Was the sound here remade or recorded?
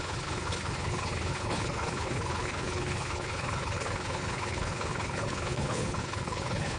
remade